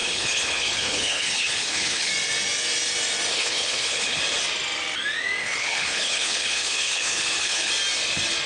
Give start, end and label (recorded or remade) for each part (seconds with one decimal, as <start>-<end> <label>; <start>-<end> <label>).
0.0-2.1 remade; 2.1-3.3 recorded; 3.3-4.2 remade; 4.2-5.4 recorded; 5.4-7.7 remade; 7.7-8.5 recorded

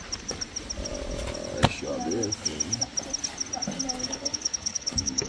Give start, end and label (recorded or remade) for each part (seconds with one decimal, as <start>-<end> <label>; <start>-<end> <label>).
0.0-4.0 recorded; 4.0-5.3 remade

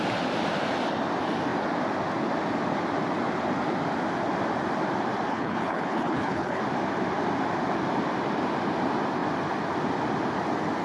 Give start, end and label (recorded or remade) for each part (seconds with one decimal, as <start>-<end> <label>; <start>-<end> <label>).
0.0-5.3 recorded; 5.3-6.6 remade; 6.6-10.8 recorded

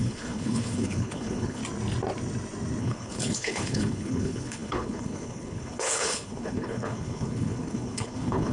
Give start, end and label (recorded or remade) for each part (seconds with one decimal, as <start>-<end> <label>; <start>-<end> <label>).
0.0-1.6 remade; 1.6-2.8 recorded; 2.8-8.5 remade

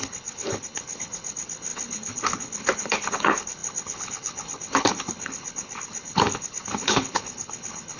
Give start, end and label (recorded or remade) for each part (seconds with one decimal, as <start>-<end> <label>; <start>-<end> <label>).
0.0-8.0 remade